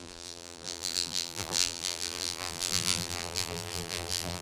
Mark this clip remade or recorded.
remade